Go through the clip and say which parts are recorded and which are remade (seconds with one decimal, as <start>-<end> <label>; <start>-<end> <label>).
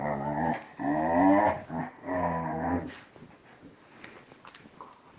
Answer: 0.0-1.8 recorded; 1.8-2.9 remade; 2.9-5.2 recorded